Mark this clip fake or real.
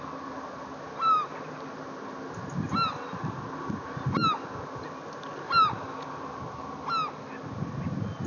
real